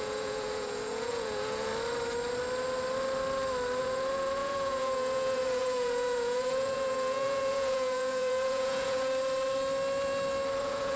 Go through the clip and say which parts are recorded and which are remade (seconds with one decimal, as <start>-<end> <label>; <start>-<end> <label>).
0.0-1.7 remade; 1.7-3.8 recorded; 3.8-9.1 remade; 9.1-10.6 recorded; 10.6-11.0 remade